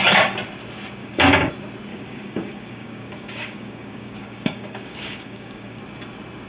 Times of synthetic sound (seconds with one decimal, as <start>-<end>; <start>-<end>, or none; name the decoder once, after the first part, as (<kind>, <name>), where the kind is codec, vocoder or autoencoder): 1.0-1.5 (codec, DAC); 1.9-5.8

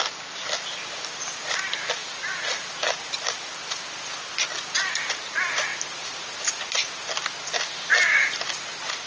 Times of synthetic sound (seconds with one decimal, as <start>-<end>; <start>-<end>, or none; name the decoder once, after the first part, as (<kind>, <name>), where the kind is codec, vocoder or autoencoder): 2.0-2.7 (vocoder, BigVGAN v2); 5.7-6.6; 7.7-9.1

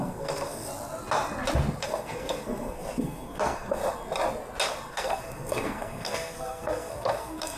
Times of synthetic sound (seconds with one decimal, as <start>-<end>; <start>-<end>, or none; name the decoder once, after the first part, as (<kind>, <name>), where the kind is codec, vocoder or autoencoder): 0.0-0.7 (codec, SNAC); 1.8-3.8; 4.9-7.6